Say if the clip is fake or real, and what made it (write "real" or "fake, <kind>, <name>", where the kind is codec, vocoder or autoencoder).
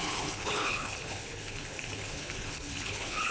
fake, codec, HILCodec